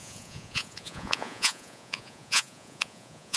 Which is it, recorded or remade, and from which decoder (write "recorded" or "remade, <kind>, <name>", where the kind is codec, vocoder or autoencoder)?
remade, vocoder, Vocos